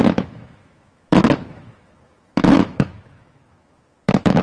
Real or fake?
fake